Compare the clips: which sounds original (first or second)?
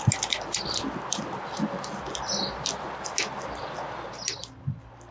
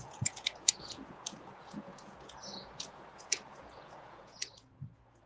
first